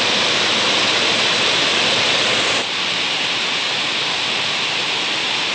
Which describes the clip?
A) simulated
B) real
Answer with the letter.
B